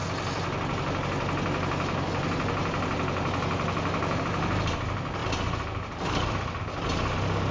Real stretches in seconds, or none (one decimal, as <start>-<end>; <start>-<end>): 0.0-5.2; 6.6-7.5